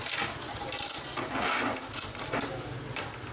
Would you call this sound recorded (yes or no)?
yes